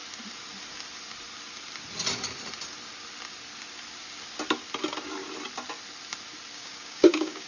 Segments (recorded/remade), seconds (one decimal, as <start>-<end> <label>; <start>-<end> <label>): 0.0-6.5 recorded; 6.5-7.5 remade